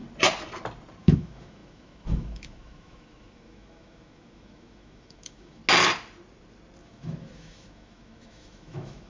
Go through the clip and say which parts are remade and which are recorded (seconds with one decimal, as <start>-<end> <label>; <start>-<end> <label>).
0.0-1.0 recorded; 1.0-5.6 remade; 5.6-6.8 recorded; 6.8-9.1 remade